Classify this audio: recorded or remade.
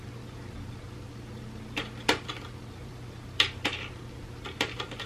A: remade